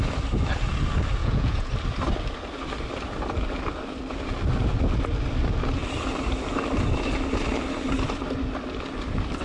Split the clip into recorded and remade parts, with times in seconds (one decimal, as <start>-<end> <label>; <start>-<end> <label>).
0.0-1.2 recorded; 1.2-1.7 remade; 1.7-9.4 recorded